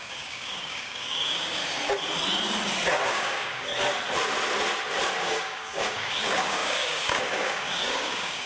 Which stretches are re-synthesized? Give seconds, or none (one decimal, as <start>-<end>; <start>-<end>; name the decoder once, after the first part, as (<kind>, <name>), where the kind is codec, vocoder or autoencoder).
0.0-1.6 (codec, DAC); 3.1-3.7; 5.2-8.5